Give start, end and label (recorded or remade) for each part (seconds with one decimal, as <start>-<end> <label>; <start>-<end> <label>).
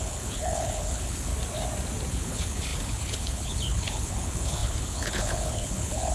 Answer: 0.0-1.3 remade; 1.3-2.1 recorded; 2.1-6.1 remade